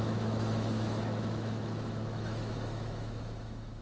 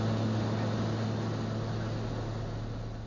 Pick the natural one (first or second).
second